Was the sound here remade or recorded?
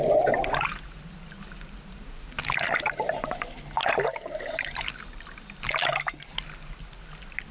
recorded